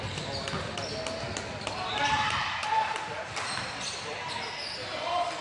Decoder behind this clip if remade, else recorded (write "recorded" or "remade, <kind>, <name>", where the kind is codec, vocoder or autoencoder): recorded